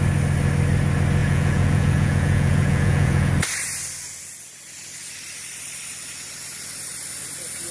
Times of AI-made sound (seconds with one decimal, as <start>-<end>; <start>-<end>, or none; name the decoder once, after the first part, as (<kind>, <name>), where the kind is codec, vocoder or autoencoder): 1.2-3.3 (vocoder, Vocos)